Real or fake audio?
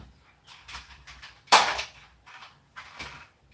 real